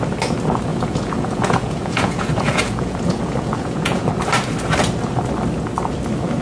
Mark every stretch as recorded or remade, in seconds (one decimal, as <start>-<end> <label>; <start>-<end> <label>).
0.0-0.7 recorded; 0.7-4.1 remade; 4.1-6.4 recorded